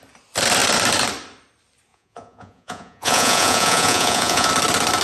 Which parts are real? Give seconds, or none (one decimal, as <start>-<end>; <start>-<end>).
0.0-1.9; 4.5-5.0